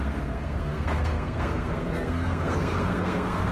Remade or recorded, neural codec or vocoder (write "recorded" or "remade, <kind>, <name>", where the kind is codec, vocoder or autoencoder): remade, codec, SNAC